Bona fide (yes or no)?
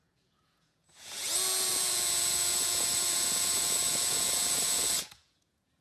no